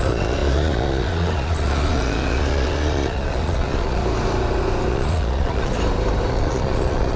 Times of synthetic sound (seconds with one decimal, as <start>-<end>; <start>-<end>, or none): 0.0-4.0; 4.9-5.7; 6.3-7.2